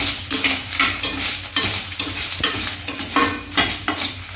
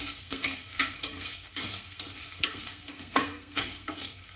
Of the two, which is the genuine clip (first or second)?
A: first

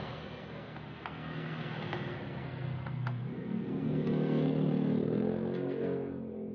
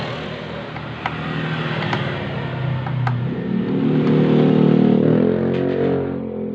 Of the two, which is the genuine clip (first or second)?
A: second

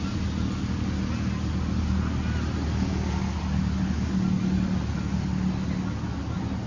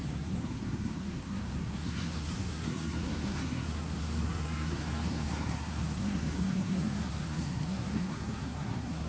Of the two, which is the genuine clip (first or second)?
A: first